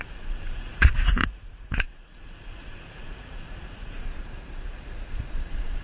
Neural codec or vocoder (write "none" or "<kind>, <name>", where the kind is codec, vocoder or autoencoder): vocoder, Vocos